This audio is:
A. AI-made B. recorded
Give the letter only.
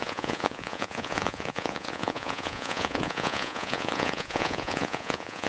A